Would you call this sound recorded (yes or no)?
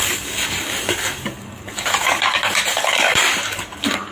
no